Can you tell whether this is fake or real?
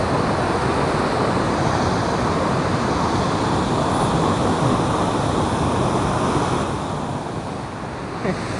real